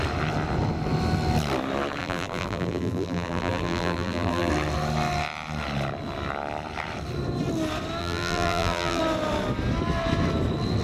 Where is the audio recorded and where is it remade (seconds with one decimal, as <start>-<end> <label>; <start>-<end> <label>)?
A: 0.0-2.0 recorded; 2.0-4.5 remade; 4.5-8.0 recorded; 8.0-9.0 remade; 9.0-10.8 recorded